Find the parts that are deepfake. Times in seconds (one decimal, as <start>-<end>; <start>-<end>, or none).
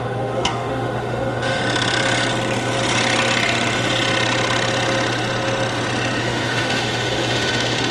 0.0-1.6; 6.2-7.9